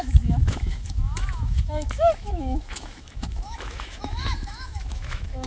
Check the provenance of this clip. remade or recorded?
remade